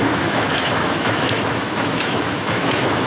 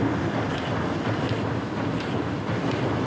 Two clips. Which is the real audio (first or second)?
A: second